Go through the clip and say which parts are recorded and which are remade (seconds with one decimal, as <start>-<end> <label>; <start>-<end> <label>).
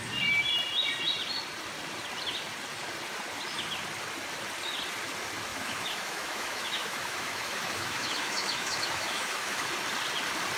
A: 0.0-5.5 recorded; 5.5-9.7 remade; 9.7-10.6 recorded